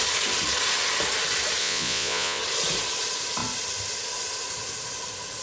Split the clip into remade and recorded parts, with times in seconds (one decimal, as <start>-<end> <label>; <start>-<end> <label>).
0.0-1.6 recorded; 1.6-2.4 remade; 2.4-5.4 recorded